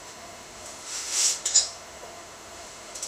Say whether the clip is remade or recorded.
remade